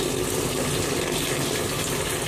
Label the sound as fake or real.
real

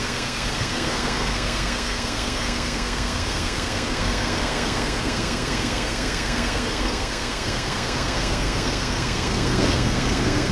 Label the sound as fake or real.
fake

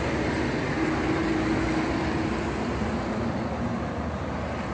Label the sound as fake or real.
real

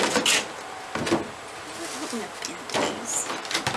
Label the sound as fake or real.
real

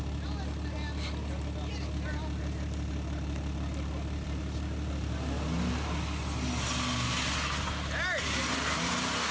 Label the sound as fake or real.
real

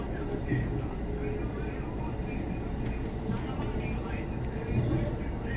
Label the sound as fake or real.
real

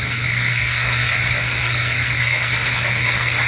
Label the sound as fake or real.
fake